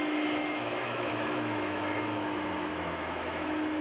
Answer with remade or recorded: remade